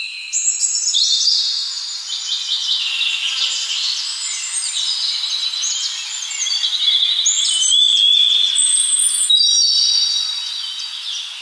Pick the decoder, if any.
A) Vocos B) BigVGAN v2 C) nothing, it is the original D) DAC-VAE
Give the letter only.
C